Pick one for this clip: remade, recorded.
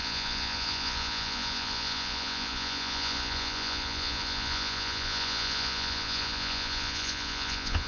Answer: remade